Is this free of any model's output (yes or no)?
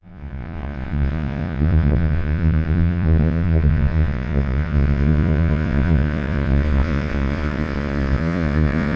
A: no